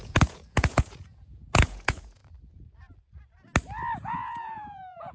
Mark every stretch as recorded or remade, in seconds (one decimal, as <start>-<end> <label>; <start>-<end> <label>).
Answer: 0.0-2.2 remade; 2.2-4.0 recorded; 4.0-5.1 remade